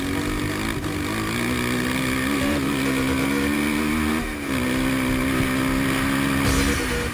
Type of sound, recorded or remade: recorded